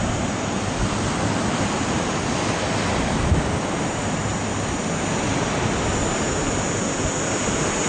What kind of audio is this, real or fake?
real